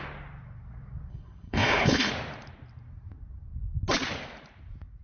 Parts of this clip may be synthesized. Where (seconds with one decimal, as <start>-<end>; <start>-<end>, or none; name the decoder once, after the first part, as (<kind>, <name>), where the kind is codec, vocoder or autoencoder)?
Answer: 1.1-2.1 (codec, HILCodec)